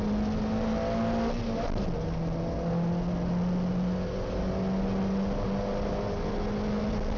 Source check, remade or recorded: recorded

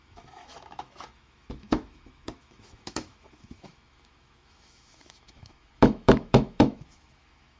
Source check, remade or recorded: remade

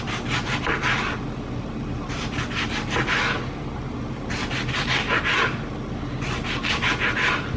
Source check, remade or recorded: recorded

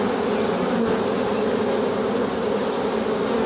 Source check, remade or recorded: recorded